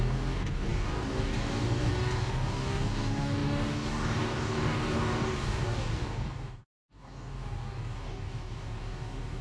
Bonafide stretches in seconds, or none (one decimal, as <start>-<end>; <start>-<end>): none